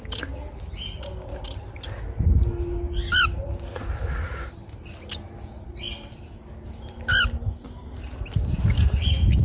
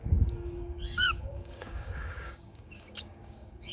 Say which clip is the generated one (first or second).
second